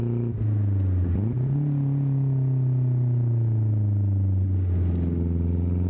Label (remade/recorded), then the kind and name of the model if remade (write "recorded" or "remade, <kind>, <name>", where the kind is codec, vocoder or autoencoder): recorded